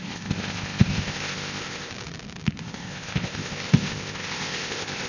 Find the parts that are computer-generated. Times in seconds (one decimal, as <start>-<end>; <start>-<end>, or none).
0.0-1.9; 2.6-5.1